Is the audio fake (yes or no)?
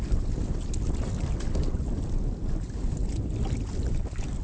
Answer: no